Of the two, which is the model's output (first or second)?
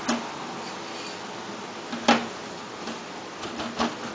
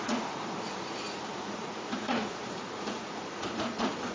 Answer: second